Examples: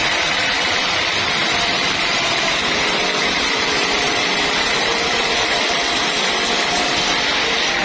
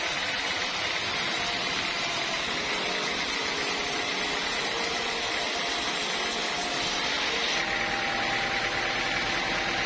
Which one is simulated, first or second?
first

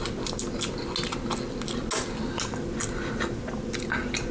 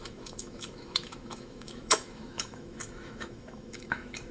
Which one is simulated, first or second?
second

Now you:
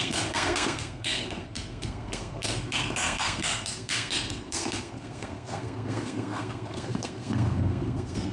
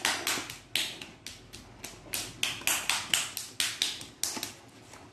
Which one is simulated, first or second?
first